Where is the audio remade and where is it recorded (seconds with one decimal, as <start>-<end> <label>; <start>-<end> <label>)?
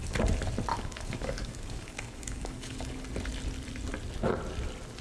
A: 0.0-0.7 recorded; 0.7-2.9 remade; 2.9-5.0 recorded